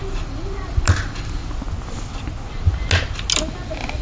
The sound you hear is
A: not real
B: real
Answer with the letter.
B